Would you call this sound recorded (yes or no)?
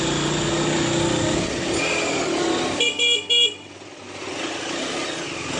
yes